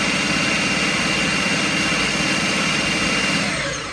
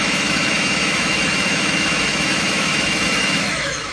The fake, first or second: second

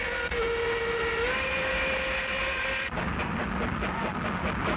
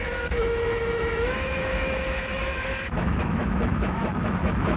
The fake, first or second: second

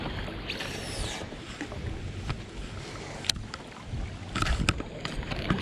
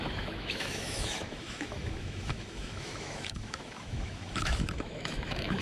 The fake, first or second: second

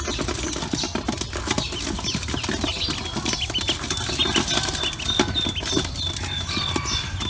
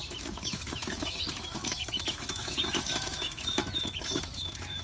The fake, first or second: second